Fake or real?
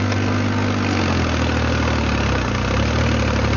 real